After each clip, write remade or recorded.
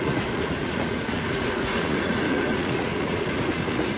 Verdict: remade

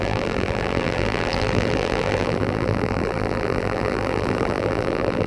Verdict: remade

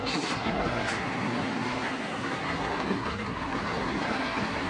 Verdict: remade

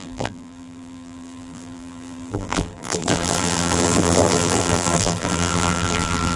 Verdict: remade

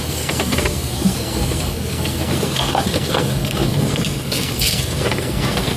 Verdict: remade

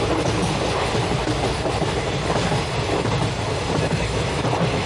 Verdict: recorded